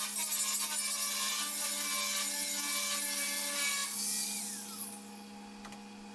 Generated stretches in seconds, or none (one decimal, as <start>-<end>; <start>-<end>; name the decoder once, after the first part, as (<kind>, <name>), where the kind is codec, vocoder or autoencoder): none